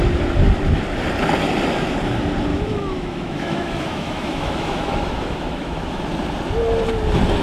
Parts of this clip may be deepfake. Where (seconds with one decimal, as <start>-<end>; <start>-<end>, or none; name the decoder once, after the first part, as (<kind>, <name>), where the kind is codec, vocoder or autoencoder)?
2.5-6.0 (autoencoder, DAC-VAE)